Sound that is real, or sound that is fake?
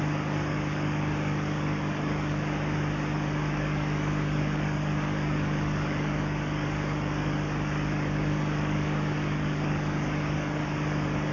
fake